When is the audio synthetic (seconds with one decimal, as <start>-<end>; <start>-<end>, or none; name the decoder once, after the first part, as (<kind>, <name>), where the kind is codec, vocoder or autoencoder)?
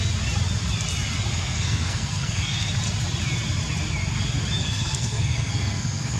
1.3-2.7 (codec, SNAC); 4.6-6.2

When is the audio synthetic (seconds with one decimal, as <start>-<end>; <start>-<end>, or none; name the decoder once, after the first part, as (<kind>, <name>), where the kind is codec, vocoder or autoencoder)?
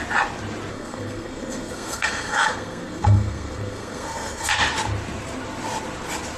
0.7-4.5 (codec, SNAC)